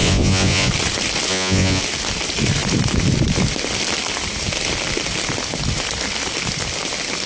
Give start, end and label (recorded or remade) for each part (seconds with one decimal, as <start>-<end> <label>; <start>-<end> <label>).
0.0-0.7 remade; 0.7-1.3 recorded; 1.3-1.8 remade; 1.8-7.3 recorded